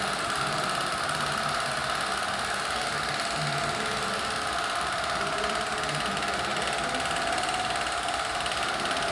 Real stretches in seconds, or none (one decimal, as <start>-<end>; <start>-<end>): 0.0-9.1